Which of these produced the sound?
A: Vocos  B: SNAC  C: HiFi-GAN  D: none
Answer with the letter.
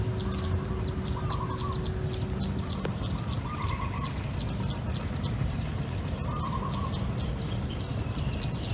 D